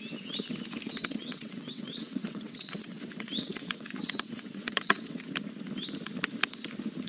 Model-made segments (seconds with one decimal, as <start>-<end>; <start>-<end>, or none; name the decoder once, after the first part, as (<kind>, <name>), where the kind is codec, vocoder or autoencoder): 0.9-5.2 (vocoder, WaveNeXt)